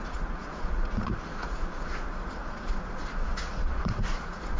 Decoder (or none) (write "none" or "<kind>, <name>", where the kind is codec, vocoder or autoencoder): vocoder, Vocos